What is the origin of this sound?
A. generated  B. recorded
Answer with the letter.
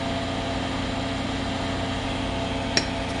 B